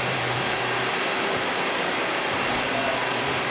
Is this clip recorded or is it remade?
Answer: remade